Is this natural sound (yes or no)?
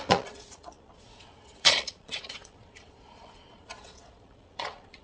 no